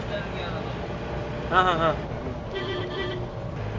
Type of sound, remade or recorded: recorded